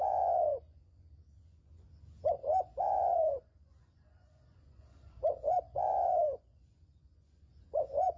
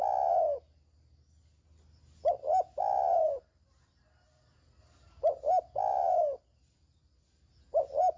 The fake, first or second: first